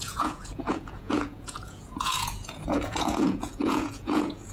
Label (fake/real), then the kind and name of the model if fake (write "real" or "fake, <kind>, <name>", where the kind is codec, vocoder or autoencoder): fake, vocoder, Vocos